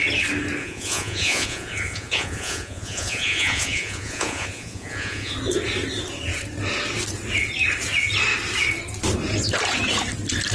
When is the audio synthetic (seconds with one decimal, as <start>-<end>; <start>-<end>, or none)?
0.6-5.3